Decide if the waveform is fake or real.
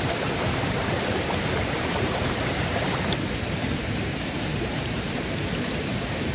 fake